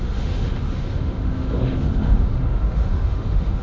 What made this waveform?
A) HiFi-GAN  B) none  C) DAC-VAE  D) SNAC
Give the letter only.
C